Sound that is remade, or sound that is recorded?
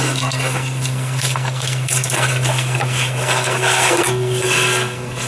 remade